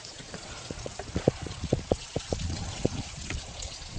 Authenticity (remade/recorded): remade